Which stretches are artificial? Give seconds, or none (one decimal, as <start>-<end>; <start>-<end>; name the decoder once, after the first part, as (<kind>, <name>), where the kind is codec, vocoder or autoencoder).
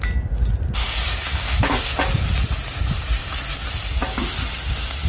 0.8-1.8 (codec, DAC)